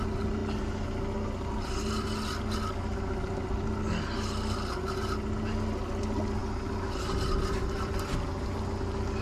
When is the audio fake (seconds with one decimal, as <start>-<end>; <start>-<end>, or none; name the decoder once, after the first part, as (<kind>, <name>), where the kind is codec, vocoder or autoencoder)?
none